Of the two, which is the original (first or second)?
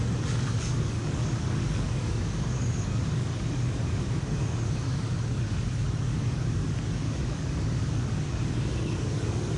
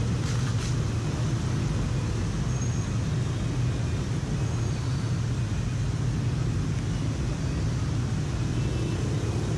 second